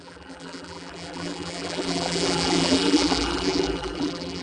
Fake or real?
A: fake